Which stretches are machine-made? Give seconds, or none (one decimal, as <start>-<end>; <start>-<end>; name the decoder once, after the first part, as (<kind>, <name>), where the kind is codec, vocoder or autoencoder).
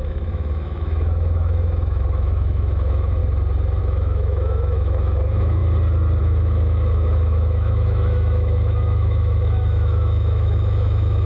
0.0-3.2 (autoencoder, DAC-VAE); 3.8-5.6; 6.2-11.3